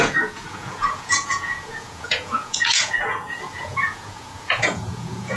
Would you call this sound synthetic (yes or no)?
yes